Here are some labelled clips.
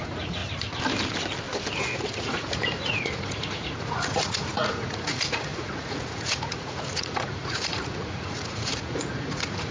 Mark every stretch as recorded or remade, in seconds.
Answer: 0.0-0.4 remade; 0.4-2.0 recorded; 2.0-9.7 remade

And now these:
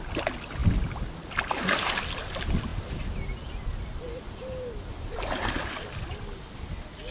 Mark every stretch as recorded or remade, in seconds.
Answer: 0.0-7.1 recorded

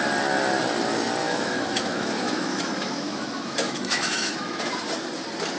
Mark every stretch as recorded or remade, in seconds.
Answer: 0.0-1.2 recorded; 1.2-4.6 remade; 4.6-5.6 recorded

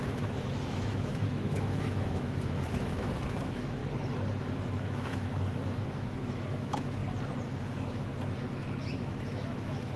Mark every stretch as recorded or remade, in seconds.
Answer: 0.0-3.8 remade; 3.8-4.4 recorded; 4.4-7.0 remade; 7.0-7.6 recorded; 7.6-8.1 remade; 8.1-8.8 recorded; 8.8-10.0 remade

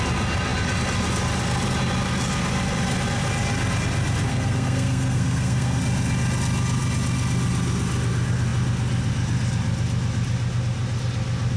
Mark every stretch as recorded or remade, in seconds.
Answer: 0.0-4.3 recorded; 4.3-5.8 remade; 5.8-11.6 recorded

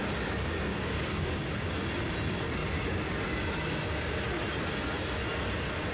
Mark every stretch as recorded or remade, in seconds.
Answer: 0.0-0.7 recorded; 0.7-1.8 remade; 1.8-5.9 recorded

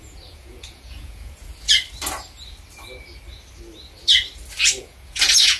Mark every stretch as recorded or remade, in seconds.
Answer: 0.0-1.5 remade; 1.5-4.8 recorded; 4.8-5.6 remade